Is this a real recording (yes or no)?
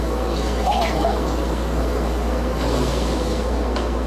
no